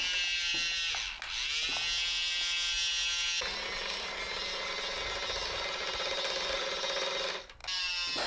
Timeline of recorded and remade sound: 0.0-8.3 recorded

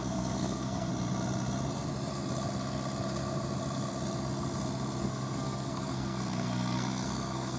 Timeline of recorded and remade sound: 0.0-0.9 remade; 0.9-5.0 recorded; 5.0-7.6 remade

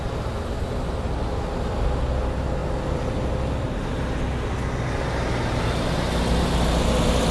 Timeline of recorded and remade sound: 0.0-7.3 recorded

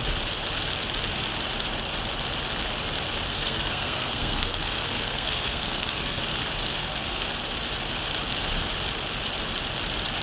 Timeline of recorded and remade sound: 0.0-3.3 recorded; 3.3-6.2 remade; 6.2-6.8 recorded; 6.8-7.3 remade; 7.3-10.2 recorded

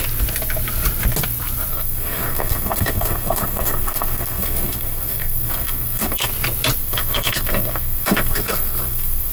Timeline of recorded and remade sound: 0.0-1.7 recorded; 1.7-6.3 remade; 6.3-6.8 recorded; 6.8-9.3 remade

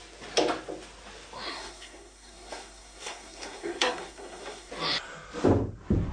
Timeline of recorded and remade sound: 0.0-1.5 recorded; 1.5-4.7 remade; 4.7-6.1 recorded